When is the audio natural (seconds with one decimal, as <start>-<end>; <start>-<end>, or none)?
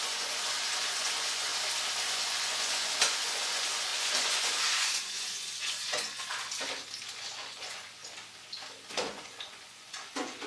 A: 1.5-2.1; 6.3-7.1; 8.0-8.9